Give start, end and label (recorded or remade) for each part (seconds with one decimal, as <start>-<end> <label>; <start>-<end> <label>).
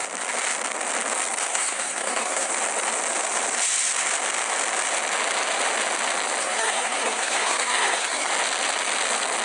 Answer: 0.0-1.5 recorded; 1.5-2.5 remade; 2.5-6.4 recorded; 6.4-8.3 remade; 8.3-9.4 recorded